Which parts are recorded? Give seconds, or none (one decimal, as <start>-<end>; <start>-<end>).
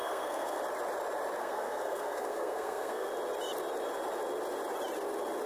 0.6-1.4; 3.1-5.5